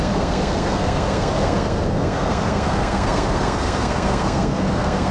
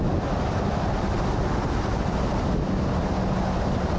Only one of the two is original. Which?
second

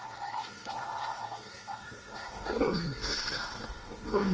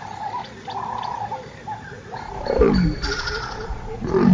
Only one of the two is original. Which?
second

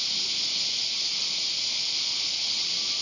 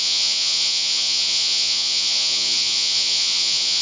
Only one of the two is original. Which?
first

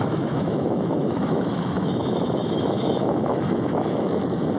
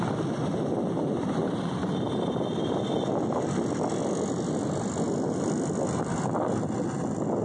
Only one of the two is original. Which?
second